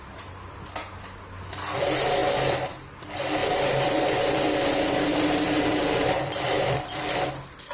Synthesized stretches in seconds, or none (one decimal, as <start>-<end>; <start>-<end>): 3.4-7.3